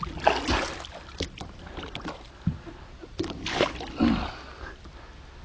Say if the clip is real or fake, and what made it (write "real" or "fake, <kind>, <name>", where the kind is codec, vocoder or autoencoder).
real